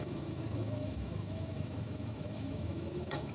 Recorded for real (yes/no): no